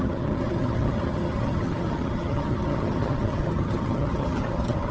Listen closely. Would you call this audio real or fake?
fake